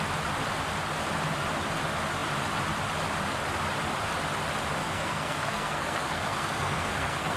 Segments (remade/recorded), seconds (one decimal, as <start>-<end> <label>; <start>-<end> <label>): 0.0-4.8 recorded; 4.8-7.4 remade